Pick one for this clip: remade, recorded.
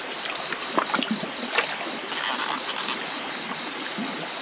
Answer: recorded